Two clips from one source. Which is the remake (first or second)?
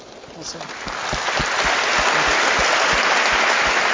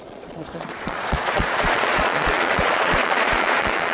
second